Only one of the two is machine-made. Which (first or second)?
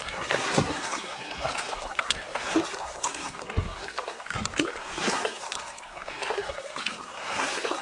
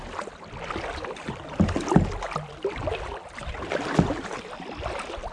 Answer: first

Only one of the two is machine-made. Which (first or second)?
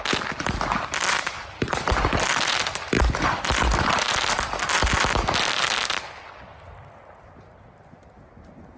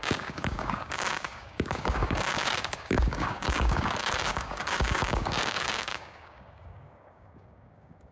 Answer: second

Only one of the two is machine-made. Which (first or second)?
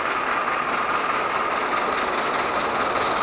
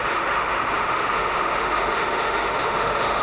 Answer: second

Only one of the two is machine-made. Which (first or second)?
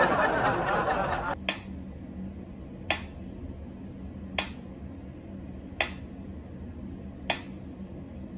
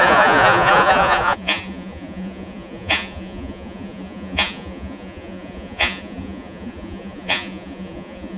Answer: second